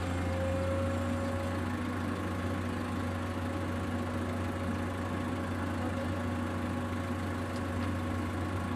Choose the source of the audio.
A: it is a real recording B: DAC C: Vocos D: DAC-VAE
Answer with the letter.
A